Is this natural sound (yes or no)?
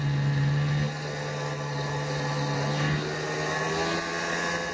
yes